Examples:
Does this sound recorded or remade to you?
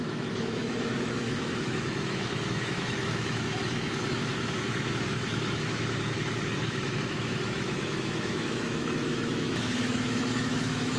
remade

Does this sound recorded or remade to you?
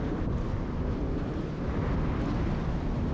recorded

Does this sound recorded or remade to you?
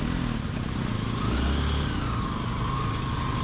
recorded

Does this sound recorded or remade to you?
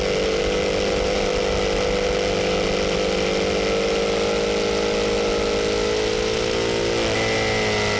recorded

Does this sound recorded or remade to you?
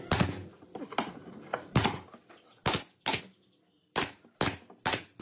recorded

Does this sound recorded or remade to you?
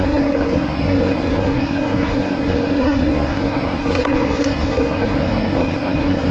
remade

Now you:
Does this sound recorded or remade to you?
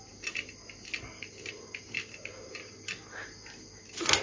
recorded